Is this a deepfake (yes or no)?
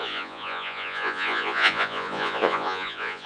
yes